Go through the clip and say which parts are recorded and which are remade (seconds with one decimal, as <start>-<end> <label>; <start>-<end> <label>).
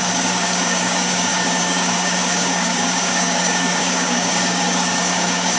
0.0-5.6 remade